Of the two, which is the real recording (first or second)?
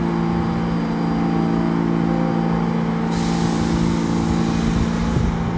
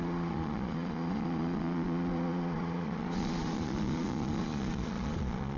first